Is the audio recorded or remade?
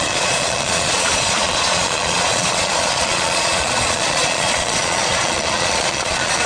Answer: remade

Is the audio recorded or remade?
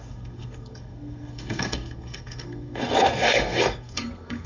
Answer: remade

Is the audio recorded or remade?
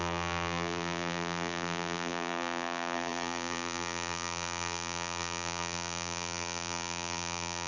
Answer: remade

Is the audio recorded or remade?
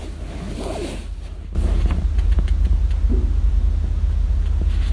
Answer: recorded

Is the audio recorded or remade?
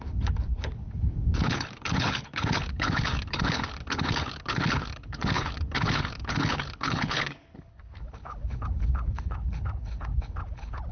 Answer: remade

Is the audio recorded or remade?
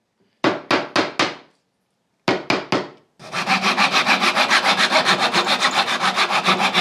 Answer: recorded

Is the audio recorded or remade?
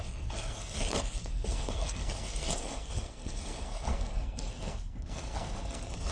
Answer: remade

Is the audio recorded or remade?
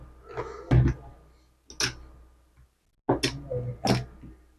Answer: recorded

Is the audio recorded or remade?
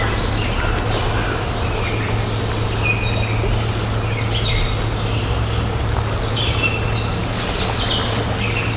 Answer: recorded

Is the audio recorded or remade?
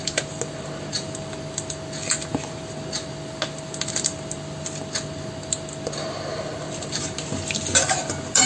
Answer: recorded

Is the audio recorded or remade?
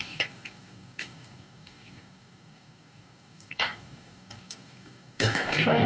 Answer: remade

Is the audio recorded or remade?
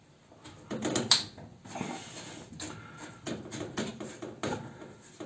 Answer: recorded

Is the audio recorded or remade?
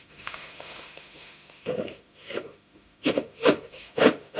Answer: remade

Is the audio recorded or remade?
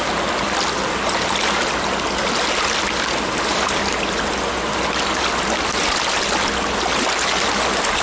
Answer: recorded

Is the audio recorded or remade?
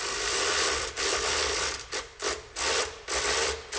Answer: recorded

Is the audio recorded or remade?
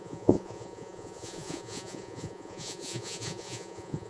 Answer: remade